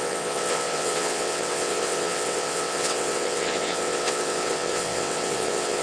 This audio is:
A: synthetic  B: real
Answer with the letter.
A